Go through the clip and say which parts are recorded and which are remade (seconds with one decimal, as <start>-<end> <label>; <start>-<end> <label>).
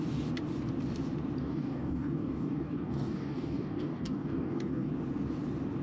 0.0-1.4 recorded; 1.4-4.9 remade; 4.9-5.8 recorded